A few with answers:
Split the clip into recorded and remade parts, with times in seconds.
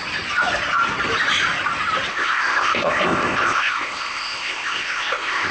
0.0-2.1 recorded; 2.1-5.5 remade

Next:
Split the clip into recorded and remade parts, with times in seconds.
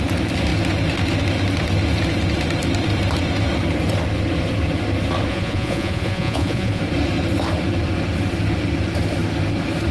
0.0-5.3 recorded; 5.3-6.8 remade; 6.8-9.9 recorded